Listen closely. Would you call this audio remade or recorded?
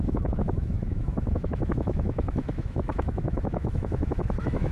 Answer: remade